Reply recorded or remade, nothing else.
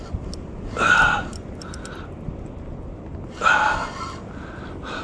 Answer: recorded